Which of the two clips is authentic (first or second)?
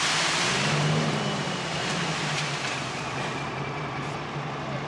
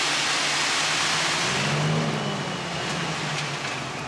second